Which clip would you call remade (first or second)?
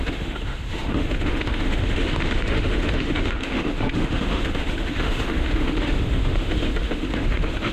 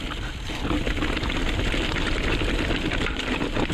first